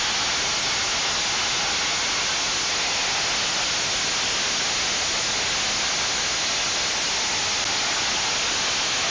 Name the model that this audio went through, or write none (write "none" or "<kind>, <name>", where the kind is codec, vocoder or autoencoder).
none